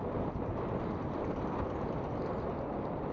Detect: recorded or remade recorded